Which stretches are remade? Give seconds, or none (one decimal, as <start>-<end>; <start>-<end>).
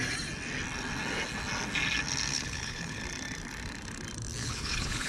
2.3-3.0; 4.4-5.1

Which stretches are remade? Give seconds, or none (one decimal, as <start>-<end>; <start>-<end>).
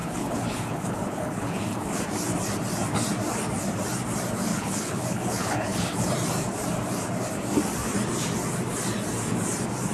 0.0-2.0; 4.5-6.1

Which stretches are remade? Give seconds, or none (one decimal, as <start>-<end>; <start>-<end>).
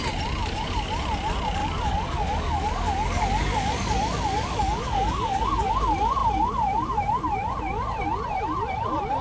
0.4-0.9; 1.6-5.7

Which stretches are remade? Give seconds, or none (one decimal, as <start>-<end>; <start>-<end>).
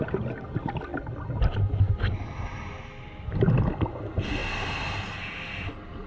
none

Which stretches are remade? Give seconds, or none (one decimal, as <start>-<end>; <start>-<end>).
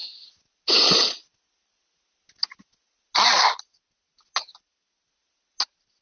none